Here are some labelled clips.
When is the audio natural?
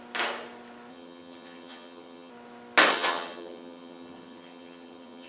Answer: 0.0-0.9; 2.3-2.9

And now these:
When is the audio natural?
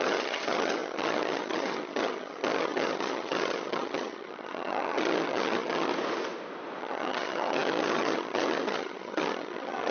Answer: 5.9-6.8